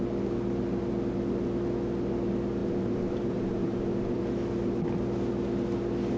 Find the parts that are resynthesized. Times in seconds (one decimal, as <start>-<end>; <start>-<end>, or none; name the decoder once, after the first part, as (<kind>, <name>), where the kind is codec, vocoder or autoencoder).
2.6-4.2 (vocoder, BigVGAN v2)